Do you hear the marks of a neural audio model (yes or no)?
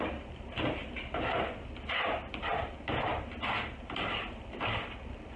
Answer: no